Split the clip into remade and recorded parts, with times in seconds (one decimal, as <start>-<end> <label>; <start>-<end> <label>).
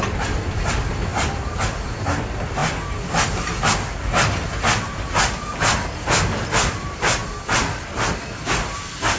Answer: 0.0-1.1 remade; 1.1-1.6 recorded; 1.6-2.6 remade; 2.6-6.4 recorded; 6.4-7.2 remade; 7.2-8.2 recorded; 8.2-9.2 remade